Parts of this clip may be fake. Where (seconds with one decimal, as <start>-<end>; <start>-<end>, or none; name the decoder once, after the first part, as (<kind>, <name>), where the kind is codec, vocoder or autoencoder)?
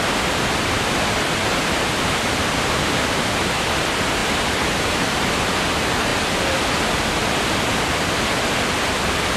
1.5-3.4 (vocoder, BigVGAN v2); 4.2-5.6